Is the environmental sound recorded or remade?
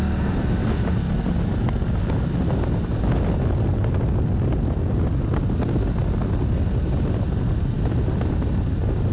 recorded